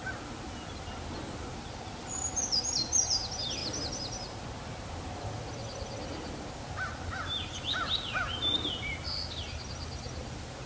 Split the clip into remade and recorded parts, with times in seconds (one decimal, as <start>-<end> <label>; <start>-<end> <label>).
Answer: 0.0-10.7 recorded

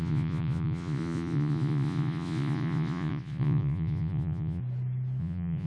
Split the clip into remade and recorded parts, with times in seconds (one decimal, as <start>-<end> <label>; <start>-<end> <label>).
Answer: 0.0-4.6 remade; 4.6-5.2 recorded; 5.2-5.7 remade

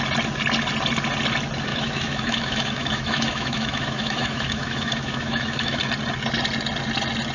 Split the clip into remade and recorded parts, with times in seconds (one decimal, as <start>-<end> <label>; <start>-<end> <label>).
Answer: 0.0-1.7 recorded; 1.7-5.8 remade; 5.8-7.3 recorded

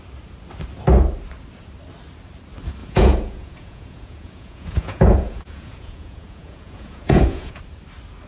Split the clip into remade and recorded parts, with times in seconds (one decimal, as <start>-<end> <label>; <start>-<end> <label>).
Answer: 0.0-2.8 recorded; 2.8-7.6 remade; 7.6-8.3 recorded